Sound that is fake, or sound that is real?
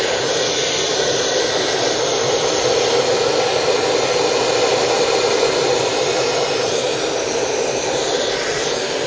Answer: real